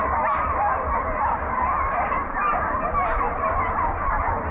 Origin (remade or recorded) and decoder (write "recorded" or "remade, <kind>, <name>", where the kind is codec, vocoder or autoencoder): recorded